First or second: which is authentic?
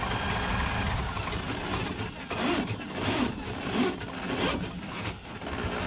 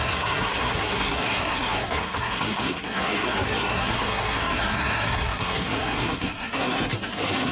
first